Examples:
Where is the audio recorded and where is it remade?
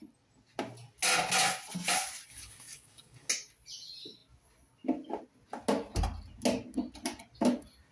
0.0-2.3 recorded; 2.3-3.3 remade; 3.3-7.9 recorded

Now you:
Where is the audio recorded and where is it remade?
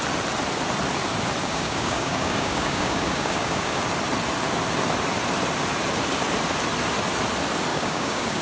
0.0-1.4 recorded; 1.4-3.8 remade; 3.8-7.7 recorded; 7.7-8.4 remade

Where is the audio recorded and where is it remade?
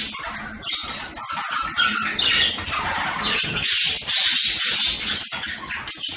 0.0-6.2 recorded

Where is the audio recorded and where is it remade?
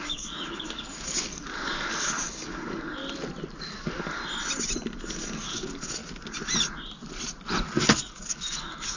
0.0-3.0 remade; 3.0-3.6 recorded; 3.6-4.2 remade; 4.2-5.0 recorded; 5.0-6.0 remade; 6.0-7.8 recorded; 7.8-9.0 remade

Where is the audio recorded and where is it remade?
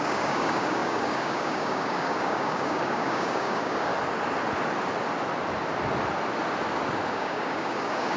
0.0-3.9 remade; 3.9-7.1 recorded; 7.1-8.2 remade